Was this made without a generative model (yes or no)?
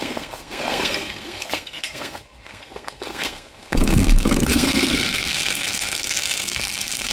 no